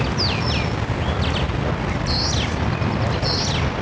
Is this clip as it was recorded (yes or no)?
yes